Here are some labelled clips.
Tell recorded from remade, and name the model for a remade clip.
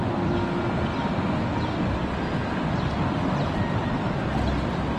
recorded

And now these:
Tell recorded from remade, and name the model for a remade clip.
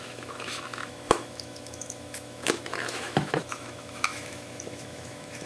remade, autoencoder, DAC-VAE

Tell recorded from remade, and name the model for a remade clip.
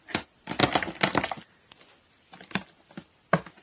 recorded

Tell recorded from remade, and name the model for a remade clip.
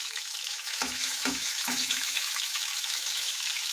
remade, autoencoder, DAC-VAE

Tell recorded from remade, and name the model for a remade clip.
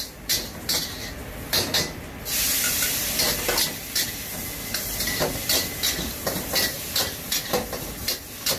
recorded